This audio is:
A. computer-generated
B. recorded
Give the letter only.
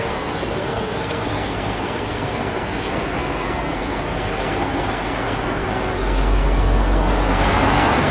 A